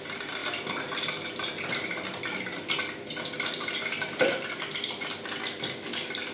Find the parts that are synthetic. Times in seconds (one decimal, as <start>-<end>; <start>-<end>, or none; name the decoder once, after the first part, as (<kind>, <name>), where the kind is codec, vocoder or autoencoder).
none